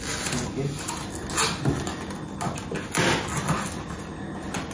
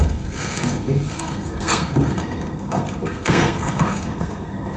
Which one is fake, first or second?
second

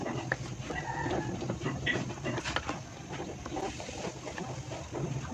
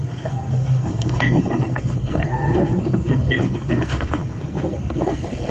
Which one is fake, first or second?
second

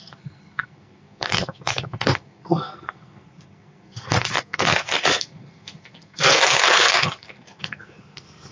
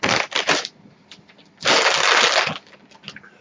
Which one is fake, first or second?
first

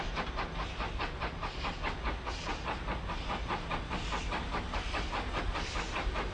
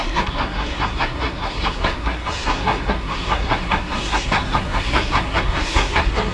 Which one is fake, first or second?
second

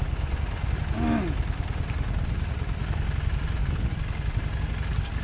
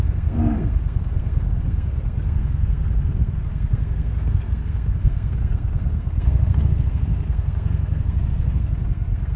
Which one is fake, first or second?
second